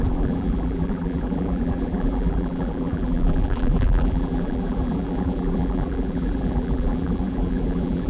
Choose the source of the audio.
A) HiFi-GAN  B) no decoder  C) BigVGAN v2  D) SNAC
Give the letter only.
C